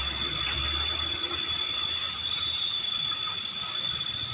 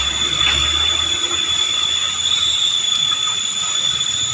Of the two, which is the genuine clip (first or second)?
second